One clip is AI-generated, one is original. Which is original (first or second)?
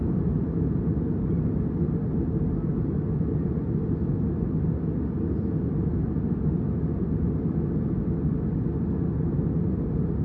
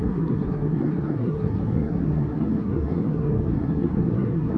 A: first